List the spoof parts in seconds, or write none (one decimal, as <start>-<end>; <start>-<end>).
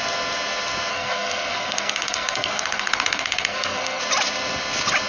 0.9-4.0